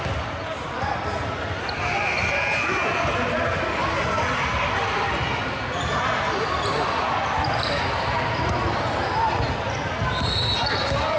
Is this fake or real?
real